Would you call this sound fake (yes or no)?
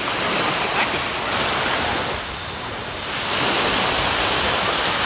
no